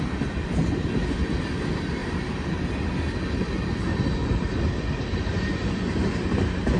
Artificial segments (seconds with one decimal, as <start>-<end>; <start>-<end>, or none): 2.0-2.7